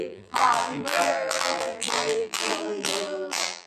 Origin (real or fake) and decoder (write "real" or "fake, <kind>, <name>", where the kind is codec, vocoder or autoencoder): fake, vocoder, BigVGAN v2